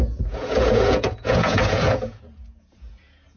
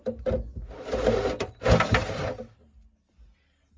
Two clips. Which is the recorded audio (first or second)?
second